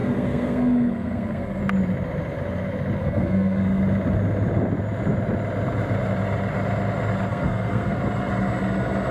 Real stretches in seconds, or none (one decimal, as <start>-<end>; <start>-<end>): 1.6-3.0; 3.8-7.3; 8.0-9.1